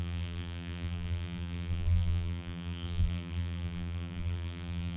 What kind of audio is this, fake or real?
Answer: fake